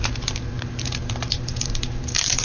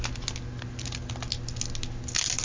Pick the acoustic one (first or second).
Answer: second